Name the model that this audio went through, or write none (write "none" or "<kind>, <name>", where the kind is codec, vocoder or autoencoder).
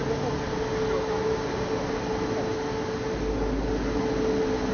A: none